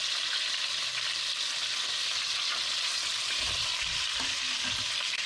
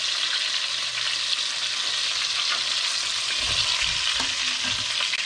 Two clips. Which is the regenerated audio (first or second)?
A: first